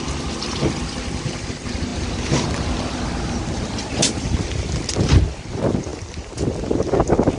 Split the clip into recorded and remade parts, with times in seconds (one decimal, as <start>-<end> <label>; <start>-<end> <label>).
0.0-7.4 recorded